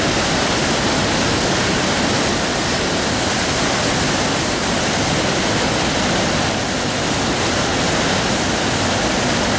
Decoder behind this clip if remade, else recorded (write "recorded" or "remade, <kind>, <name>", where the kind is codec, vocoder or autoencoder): recorded